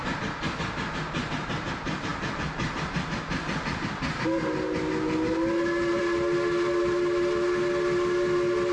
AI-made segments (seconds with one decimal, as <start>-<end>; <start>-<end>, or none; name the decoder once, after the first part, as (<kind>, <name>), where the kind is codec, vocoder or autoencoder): none